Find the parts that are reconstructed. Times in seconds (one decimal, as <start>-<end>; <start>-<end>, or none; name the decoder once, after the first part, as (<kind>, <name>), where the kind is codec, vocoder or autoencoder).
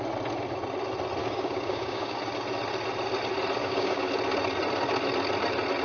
1.2-2.2 (codec, DAC); 3.6-4.1